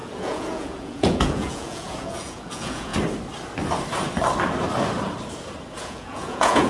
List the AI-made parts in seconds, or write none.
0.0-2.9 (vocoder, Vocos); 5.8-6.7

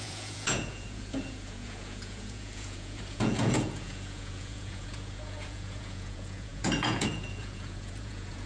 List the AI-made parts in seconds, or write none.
0.0-8.5 (vocoder, Vocos)